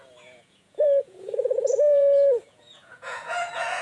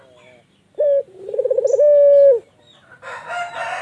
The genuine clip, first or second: second